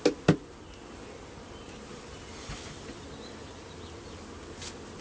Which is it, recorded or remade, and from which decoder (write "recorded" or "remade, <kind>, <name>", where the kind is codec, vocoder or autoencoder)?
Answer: recorded